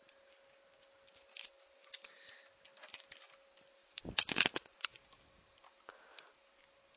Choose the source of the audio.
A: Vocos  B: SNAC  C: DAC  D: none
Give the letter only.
D